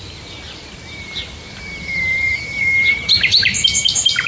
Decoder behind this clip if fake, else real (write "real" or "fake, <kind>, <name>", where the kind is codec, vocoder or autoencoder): fake, vocoder, BigVGAN v2